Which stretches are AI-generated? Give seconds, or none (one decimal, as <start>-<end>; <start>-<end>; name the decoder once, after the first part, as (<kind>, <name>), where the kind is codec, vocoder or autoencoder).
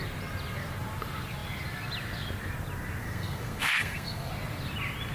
3.0-4.3 (codec, SNAC)